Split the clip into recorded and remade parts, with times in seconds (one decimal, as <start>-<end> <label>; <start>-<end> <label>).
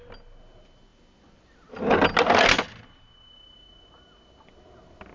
0.0-5.1 recorded